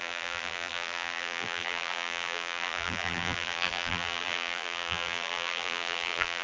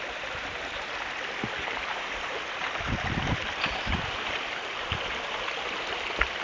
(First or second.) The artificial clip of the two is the first